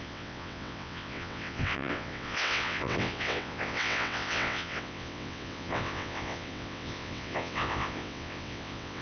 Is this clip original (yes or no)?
no